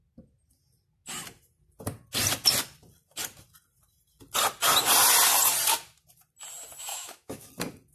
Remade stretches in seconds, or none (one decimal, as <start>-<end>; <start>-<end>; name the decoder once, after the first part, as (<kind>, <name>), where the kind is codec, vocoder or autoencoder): 6.9-7.5 (autoencoder, DAC-VAE)